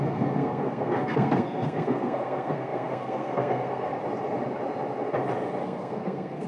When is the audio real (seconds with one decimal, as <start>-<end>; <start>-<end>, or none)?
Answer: 3.9-5.6